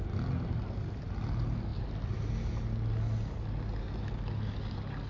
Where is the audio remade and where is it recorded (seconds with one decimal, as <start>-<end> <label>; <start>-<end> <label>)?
0.0-5.1 recorded